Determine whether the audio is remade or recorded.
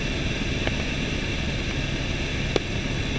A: recorded